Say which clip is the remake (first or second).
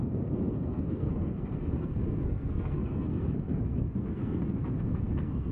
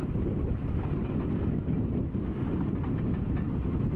first